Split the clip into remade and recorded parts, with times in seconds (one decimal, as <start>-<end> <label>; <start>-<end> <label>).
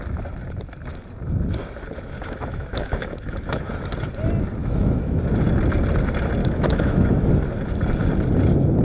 0.0-2.2 recorded; 2.2-3.7 remade; 3.7-4.6 recorded; 4.6-5.2 remade; 5.2-6.4 recorded; 6.4-7.3 remade; 7.3-8.8 recorded